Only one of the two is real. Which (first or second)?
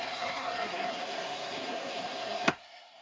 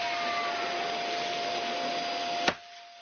second